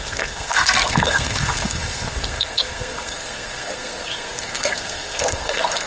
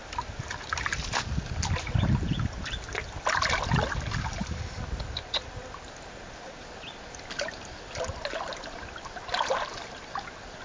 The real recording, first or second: second